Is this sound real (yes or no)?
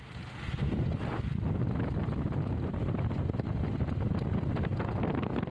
yes